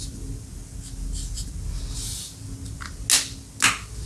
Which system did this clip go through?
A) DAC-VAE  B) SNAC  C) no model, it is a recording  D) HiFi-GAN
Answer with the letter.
C